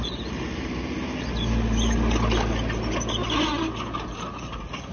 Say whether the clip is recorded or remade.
recorded